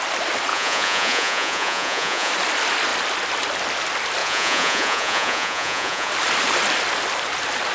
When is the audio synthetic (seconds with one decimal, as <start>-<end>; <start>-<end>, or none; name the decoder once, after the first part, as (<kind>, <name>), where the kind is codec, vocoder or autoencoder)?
0.5-2.3 (vocoder, Vocos); 4.2-6.1